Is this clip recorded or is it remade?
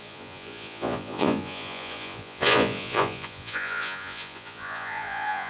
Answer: remade